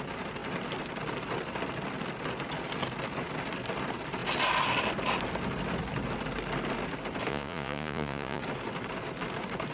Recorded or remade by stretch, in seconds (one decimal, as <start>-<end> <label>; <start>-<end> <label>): 0.0-7.3 recorded; 7.3-8.4 remade; 8.4-9.7 recorded